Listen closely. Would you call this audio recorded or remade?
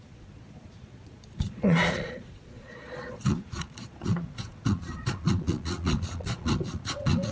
remade